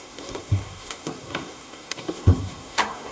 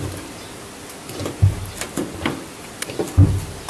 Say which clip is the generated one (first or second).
first